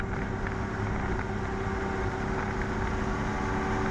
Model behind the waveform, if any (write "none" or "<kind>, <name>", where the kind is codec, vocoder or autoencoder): none